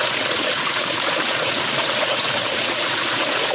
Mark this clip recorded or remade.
remade